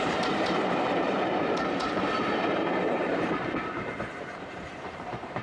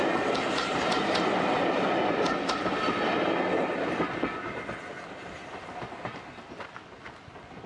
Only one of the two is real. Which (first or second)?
second